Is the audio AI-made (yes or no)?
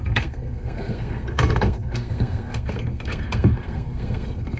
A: yes